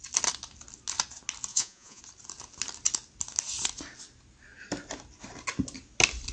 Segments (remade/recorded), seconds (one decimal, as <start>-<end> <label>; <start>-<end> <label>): 0.0-1.5 recorded; 1.5-2.0 remade; 2.0-6.3 recorded